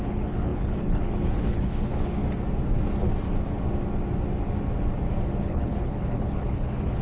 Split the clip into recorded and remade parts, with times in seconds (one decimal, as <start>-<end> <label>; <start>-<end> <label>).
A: 0.0-2.2 remade; 2.2-5.4 recorded; 5.4-7.0 remade